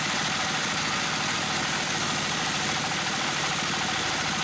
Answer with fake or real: real